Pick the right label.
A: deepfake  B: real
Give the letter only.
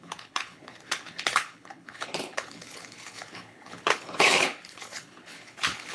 A